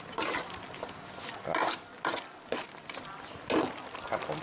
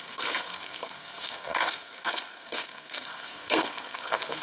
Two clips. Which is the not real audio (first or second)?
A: second